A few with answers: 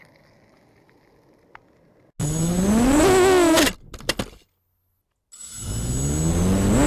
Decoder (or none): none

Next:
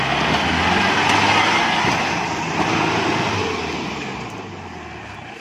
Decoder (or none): none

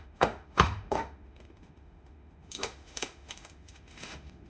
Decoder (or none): autoencoder, DAC-VAE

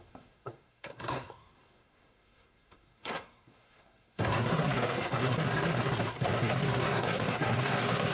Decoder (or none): codec, SNAC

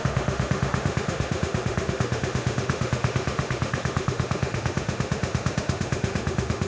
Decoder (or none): autoencoder, DAC-VAE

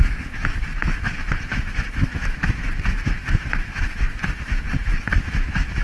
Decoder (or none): autoencoder, DAC-VAE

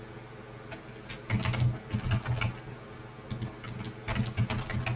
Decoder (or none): none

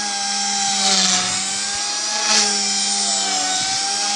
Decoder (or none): none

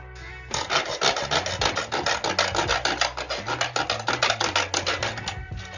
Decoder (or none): none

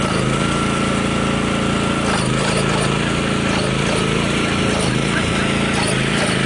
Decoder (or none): none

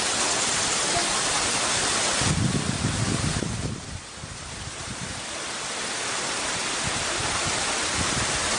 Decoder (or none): none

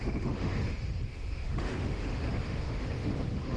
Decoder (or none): autoencoder, DAC-VAE